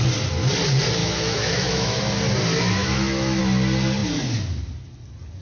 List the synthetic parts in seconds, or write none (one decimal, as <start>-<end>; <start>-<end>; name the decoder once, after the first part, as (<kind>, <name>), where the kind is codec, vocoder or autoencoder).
1.0-2.0 (autoencoder, DAC-VAE); 2.8-3.4